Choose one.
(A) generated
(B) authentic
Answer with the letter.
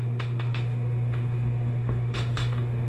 A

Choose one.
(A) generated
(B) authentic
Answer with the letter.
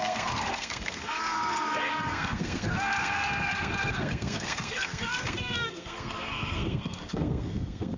A